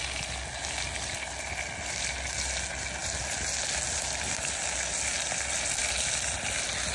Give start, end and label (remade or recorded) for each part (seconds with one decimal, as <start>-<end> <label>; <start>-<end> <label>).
0.0-6.9 recorded

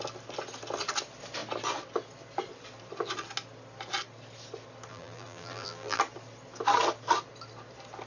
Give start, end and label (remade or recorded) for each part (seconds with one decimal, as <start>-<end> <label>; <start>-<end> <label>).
0.0-4.9 recorded; 4.9-6.0 remade; 6.0-8.1 recorded

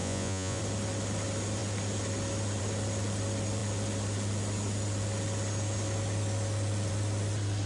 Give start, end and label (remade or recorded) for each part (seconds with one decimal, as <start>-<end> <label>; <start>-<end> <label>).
0.0-0.6 remade; 0.6-7.7 recorded

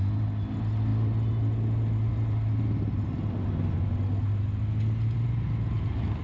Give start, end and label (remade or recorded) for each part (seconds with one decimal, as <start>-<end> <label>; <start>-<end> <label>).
0.0-6.2 recorded

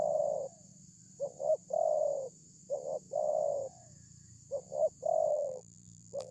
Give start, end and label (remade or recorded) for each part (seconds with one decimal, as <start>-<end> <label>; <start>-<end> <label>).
0.0-5.3 recorded; 5.3-6.3 remade

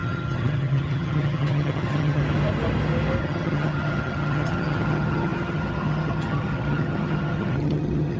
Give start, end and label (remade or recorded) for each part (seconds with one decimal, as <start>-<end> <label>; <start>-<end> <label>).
0.0-2.2 remade; 2.2-3.2 recorded; 3.2-8.2 remade